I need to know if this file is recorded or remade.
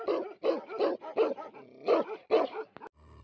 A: recorded